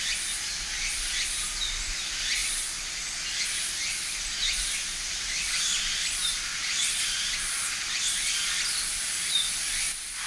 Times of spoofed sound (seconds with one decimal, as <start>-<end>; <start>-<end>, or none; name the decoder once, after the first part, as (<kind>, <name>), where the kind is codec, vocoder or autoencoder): none